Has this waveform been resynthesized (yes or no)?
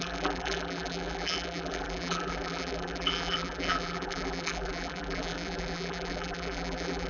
yes